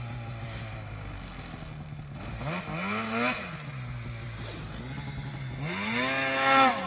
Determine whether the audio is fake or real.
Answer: real